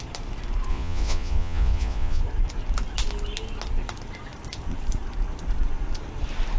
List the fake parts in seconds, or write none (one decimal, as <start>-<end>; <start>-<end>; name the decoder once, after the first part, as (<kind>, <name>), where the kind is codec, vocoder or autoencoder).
0.7-2.2 (vocoder, Vocos)